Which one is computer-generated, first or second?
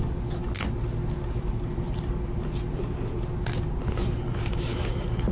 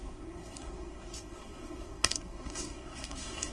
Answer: second